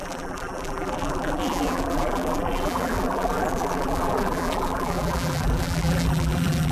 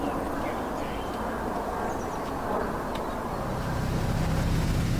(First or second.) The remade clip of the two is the first